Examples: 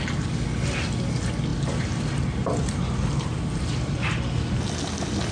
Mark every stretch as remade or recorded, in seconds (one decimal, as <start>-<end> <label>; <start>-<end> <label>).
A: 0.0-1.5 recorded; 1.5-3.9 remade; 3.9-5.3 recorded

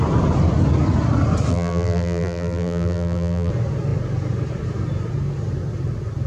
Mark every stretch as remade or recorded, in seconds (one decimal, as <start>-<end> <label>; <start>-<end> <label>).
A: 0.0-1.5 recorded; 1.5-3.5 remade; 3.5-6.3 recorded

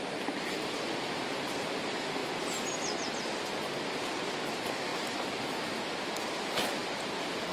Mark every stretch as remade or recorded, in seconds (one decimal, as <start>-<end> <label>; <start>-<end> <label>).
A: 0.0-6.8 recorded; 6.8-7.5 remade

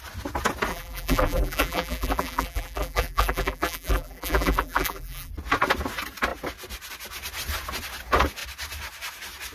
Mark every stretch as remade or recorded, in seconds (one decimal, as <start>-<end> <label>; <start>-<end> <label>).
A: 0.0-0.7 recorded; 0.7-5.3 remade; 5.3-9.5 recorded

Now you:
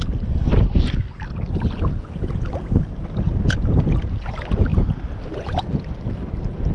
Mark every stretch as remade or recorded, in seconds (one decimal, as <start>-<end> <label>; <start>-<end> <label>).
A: 0.0-0.8 remade; 0.8-4.7 recorded; 4.7-6.7 remade

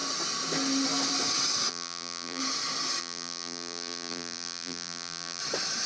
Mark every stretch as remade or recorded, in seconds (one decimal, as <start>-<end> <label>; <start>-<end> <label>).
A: 0.0-1.7 recorded; 1.7-2.4 remade; 2.4-3.0 recorded; 3.0-5.4 remade; 5.4-5.9 recorded

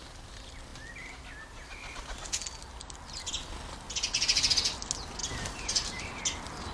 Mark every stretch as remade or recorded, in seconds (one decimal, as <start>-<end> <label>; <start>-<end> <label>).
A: 0.0-5.2 recorded; 5.2-6.0 remade; 6.0-6.7 recorded